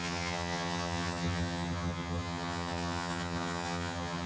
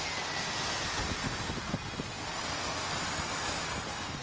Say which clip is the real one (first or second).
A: second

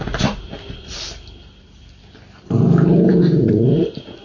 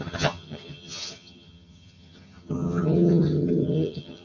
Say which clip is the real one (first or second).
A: first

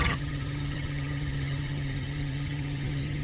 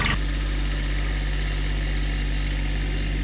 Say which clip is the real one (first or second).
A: second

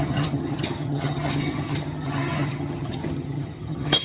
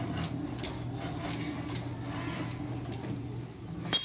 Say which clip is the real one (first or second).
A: second